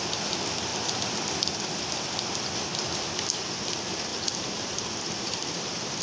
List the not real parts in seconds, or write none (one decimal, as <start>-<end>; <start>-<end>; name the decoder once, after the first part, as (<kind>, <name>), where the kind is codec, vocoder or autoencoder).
4.1-6.0 (vocoder, BigVGAN v2)